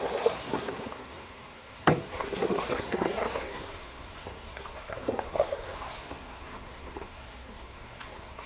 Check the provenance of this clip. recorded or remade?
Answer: remade